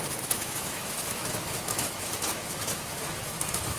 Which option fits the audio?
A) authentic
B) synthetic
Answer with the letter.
B